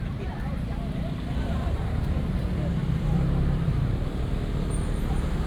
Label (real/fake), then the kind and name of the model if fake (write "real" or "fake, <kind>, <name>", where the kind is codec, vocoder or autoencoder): fake, vocoder, BigVGAN v2